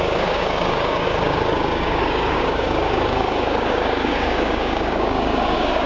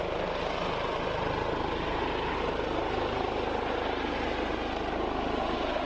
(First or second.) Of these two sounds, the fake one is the first